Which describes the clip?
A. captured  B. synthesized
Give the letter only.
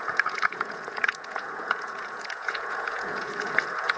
B